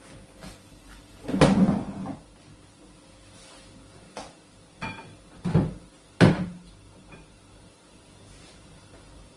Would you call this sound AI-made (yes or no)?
no